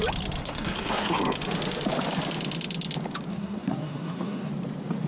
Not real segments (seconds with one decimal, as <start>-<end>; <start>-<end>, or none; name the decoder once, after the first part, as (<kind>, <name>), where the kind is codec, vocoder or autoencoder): 0.4-1.2 (codec, SNAC); 3.3-4.5